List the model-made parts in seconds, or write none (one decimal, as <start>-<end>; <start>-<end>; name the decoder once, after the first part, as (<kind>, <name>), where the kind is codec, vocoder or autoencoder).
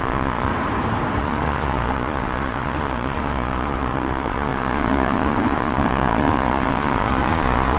0.0-0.5 (vocoder, Vocos); 1.2-7.8